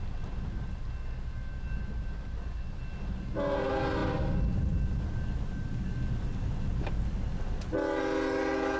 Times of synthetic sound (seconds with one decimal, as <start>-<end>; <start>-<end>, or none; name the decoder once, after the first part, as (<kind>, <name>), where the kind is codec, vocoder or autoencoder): none